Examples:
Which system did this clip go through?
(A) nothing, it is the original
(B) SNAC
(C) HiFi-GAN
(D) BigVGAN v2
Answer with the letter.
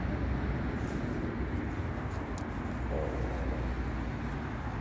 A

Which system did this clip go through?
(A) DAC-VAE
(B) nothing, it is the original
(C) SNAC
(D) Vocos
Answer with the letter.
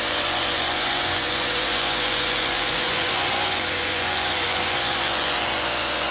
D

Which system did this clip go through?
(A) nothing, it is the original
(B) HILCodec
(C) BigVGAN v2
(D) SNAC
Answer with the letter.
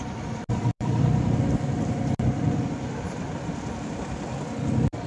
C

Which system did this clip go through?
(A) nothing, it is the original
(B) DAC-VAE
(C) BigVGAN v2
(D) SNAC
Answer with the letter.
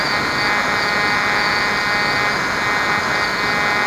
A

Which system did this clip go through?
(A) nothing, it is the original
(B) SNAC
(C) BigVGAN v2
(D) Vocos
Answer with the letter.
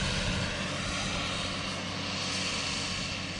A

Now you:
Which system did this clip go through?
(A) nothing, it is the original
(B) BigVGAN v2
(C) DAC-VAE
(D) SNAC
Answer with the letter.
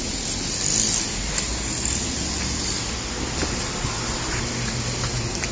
A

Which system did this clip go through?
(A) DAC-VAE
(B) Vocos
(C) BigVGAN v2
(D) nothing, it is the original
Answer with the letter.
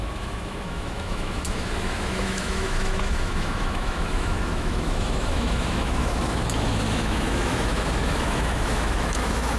A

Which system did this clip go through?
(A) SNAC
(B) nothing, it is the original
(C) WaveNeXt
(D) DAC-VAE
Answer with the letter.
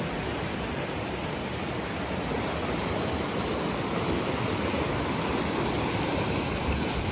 B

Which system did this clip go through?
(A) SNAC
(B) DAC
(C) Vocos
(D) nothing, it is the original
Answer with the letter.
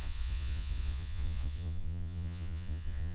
C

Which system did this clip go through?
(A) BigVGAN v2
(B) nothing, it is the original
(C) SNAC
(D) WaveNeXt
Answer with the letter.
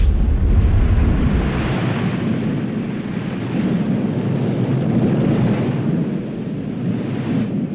B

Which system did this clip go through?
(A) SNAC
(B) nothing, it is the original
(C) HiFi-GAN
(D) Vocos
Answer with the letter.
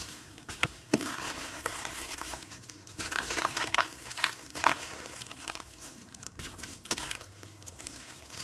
A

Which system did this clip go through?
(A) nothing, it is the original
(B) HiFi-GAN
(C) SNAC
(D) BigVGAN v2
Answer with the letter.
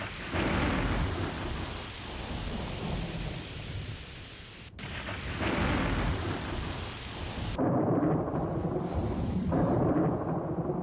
D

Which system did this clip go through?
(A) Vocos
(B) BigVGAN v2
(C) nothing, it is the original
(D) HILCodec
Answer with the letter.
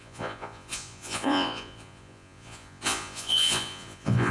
A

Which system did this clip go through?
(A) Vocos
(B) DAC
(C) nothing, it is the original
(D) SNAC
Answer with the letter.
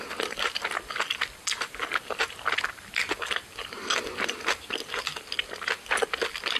C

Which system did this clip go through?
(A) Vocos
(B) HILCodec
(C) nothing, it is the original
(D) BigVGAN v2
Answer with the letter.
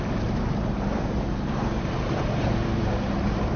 D